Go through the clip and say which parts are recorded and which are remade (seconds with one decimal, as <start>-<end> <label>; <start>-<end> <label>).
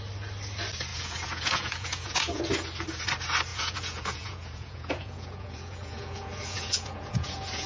0.0-0.9 recorded; 0.9-2.4 remade; 2.4-3.5 recorded; 3.5-7.7 remade